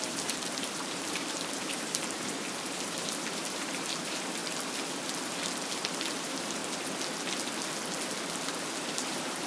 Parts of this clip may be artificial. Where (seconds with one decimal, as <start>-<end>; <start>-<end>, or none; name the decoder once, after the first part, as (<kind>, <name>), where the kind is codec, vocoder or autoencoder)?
0.0-4.4 (vocoder, BigVGAN v2); 6.1-6.6; 8.9-9.5